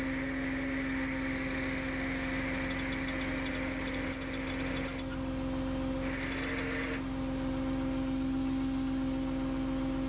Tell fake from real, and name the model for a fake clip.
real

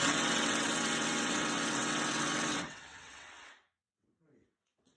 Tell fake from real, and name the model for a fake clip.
fake, vocoder, WaveNeXt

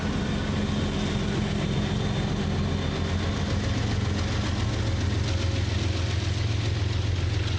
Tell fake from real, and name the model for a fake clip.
real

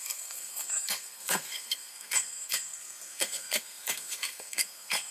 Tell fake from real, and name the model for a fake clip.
fake, codec, SNAC